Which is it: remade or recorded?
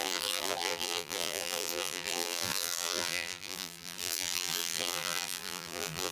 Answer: remade